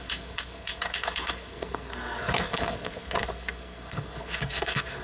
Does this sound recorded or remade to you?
remade